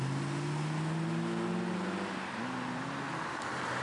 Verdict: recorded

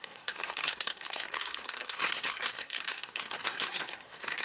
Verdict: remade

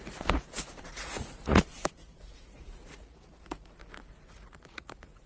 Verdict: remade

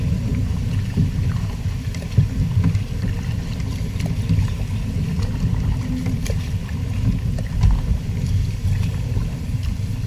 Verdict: recorded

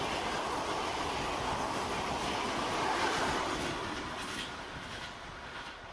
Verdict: recorded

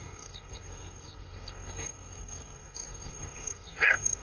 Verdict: remade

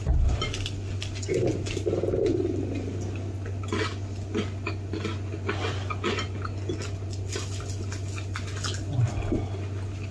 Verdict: recorded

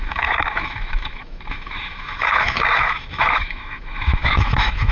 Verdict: remade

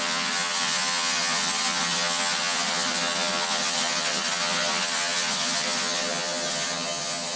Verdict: remade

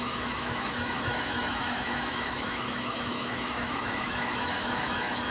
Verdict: remade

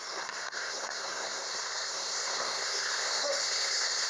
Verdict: remade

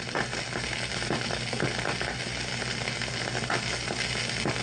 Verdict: recorded